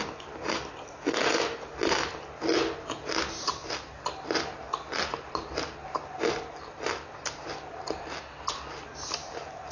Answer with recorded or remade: recorded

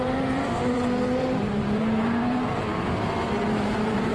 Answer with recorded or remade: remade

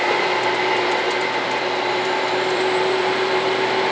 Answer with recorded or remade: remade